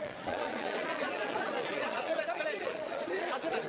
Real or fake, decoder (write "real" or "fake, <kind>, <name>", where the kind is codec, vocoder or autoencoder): fake, vocoder, Vocos